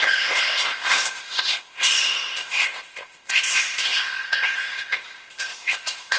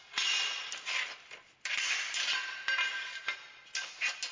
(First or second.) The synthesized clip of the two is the first